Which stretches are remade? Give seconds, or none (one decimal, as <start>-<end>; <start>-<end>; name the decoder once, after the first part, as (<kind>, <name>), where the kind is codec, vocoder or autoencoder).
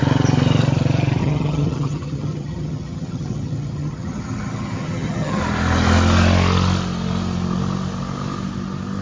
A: 1.2-5.4 (vocoder, HiFi-GAN)